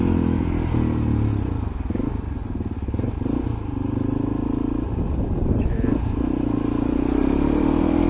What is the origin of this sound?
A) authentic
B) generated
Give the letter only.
A